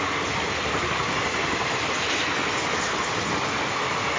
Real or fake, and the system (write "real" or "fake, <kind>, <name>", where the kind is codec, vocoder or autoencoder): real